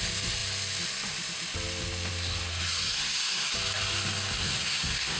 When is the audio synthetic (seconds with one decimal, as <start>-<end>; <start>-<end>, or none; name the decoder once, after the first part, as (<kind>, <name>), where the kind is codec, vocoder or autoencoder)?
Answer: 2.5-3.5 (codec, SNAC); 4.4-5.2